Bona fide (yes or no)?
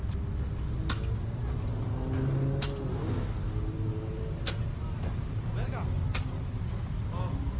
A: yes